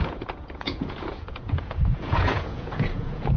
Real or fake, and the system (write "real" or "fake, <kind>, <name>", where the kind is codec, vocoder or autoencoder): fake, vocoder, Vocos